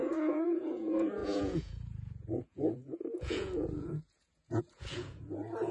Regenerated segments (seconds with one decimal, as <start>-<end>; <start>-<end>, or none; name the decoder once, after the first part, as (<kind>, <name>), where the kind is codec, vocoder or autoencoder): 0.0-5.7 (vocoder, Vocos)